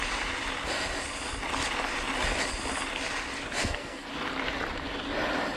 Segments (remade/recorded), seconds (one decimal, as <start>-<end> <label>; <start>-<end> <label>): 0.0-3.6 recorded; 3.6-4.1 remade; 4.1-5.6 recorded

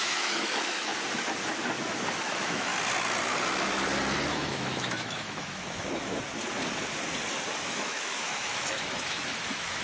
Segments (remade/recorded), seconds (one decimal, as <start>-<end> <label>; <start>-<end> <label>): 0.0-0.9 remade; 0.9-2.2 recorded; 2.2-2.7 remade; 2.7-4.3 recorded; 4.3-6.1 remade; 6.1-7.6 recorded; 7.6-9.8 remade